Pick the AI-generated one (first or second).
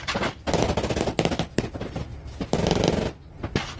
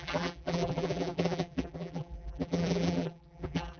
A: second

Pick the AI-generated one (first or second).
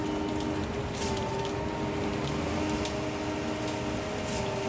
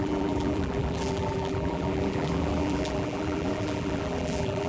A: second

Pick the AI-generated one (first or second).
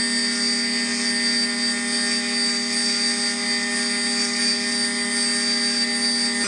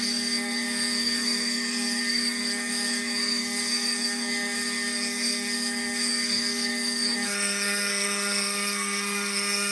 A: second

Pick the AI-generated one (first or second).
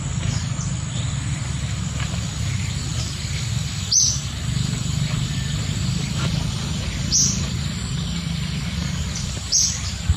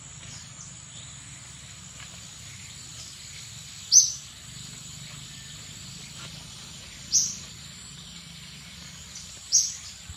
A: first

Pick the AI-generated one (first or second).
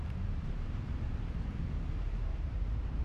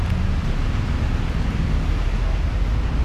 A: first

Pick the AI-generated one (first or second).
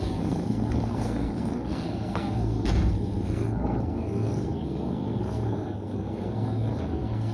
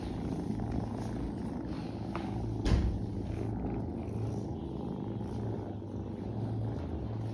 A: first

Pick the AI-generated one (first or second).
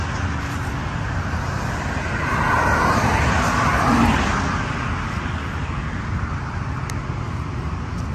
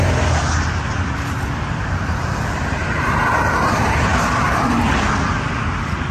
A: second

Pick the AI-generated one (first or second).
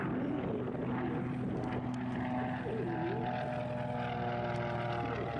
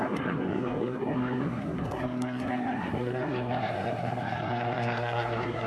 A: second